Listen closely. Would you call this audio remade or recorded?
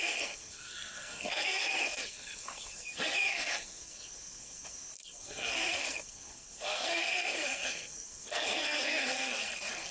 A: remade